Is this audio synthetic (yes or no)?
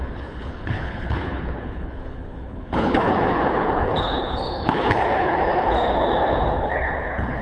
yes